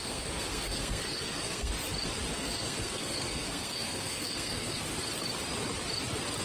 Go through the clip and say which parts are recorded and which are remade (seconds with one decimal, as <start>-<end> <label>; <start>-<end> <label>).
0.0-1.7 remade; 1.7-2.3 recorded; 2.3-4.8 remade; 4.8-6.4 recorded